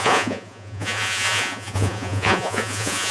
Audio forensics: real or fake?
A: fake